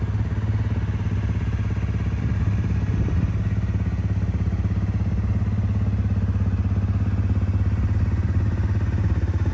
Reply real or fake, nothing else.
real